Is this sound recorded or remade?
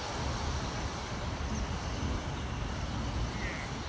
recorded